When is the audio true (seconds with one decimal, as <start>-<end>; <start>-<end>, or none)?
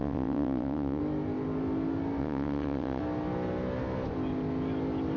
1.0-2.2; 3.0-5.2